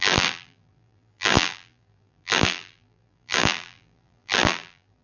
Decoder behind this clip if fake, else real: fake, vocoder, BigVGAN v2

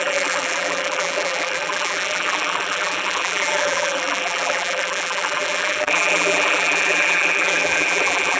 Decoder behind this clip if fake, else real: fake, vocoder, BigVGAN v2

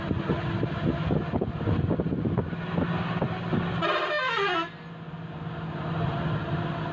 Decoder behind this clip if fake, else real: real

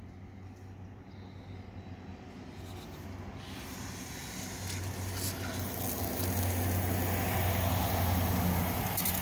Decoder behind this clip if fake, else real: real